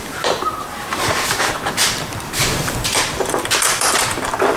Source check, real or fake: fake